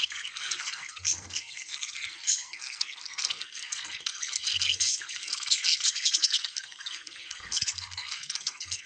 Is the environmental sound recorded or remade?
remade